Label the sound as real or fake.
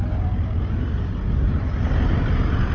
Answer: real